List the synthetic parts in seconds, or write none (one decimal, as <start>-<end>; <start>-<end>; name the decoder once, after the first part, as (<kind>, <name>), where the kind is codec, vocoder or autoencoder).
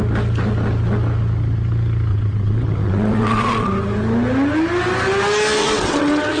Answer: 2.1-3.7 (vocoder, WaveNeXt); 5.6-6.4